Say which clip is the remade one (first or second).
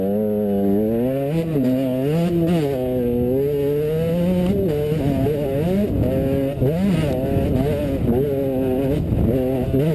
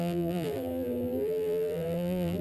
second